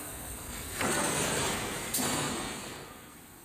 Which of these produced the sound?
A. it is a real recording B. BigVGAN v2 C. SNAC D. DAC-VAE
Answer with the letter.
C